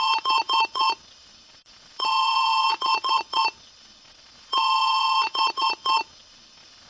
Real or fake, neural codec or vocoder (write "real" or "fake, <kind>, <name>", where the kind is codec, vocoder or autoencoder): fake, vocoder, Vocos